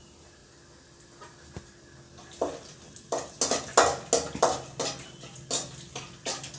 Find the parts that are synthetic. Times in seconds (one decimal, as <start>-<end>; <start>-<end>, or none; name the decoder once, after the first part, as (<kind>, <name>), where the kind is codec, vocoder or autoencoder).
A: none